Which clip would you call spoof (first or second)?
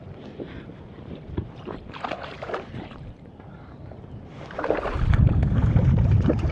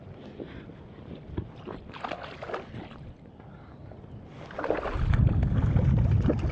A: first